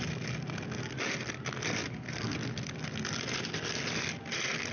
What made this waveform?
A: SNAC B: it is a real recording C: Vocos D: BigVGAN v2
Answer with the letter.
B